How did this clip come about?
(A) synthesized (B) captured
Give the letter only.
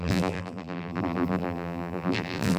A